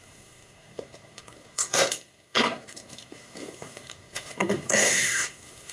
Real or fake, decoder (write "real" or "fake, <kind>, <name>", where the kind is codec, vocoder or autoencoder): fake, codec, SNAC